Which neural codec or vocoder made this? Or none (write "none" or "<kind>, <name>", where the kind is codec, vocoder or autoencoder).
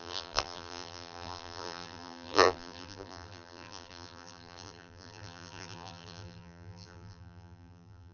vocoder, BigVGAN v2